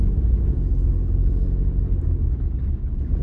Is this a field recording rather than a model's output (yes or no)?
yes